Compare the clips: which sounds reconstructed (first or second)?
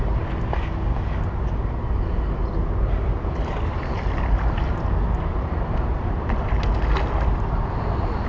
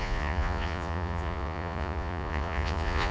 second